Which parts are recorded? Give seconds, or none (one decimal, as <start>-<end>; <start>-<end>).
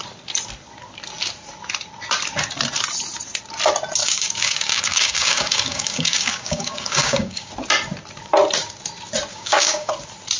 0.0-4.0; 7.5-9.3; 9.9-10.4